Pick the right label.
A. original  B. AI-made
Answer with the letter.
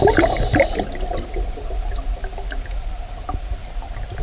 A